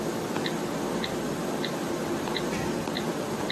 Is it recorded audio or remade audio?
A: recorded